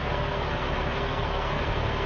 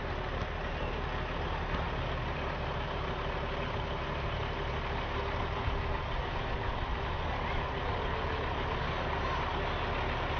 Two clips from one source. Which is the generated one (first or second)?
first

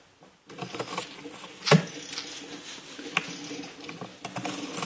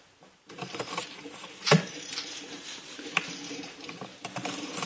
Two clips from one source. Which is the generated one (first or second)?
second